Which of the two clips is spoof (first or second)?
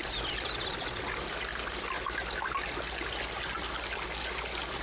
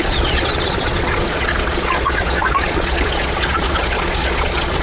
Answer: second